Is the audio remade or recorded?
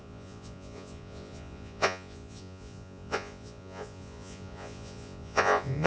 remade